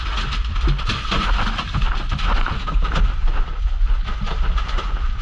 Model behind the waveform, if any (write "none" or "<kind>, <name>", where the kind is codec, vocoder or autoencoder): none